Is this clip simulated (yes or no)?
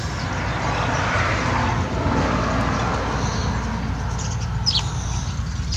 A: no